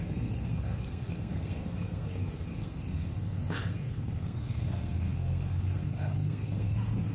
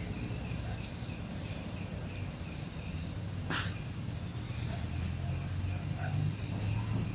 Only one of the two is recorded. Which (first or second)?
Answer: second